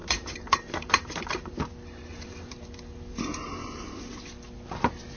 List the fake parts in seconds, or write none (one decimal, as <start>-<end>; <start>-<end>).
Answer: 0.0-1.6; 2.1-3.2